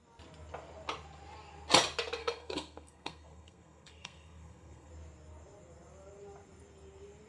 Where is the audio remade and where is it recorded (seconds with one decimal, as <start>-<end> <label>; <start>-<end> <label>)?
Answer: 0.0-2.2 recorded; 2.2-4.9 remade; 4.9-7.3 recorded